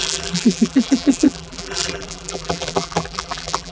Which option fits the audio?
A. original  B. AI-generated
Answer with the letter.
B